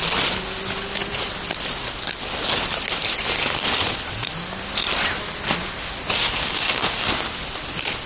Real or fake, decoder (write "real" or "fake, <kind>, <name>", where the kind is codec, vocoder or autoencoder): real